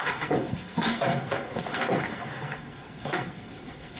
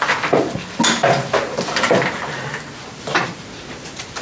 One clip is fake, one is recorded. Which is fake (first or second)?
first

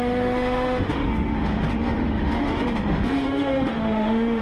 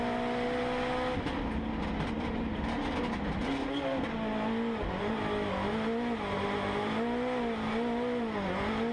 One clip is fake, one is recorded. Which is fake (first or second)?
first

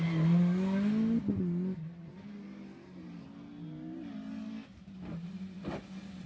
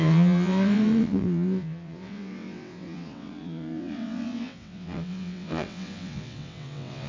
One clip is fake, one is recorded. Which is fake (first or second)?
second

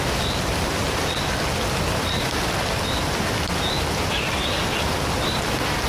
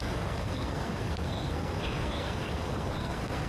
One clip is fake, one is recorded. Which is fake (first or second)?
second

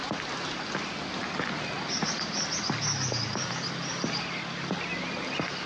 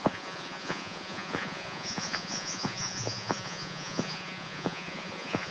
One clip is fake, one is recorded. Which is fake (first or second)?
second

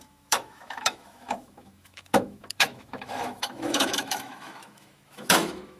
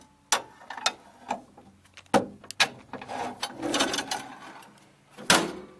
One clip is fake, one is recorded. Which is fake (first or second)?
first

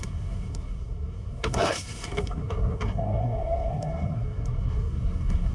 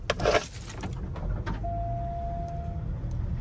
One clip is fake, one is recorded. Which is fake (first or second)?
first